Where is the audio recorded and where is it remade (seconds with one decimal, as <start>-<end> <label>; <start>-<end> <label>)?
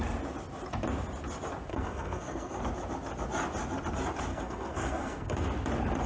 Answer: 0.0-1.7 recorded; 1.7-2.6 remade; 2.6-4.3 recorded; 4.3-5.4 remade; 5.4-6.1 recorded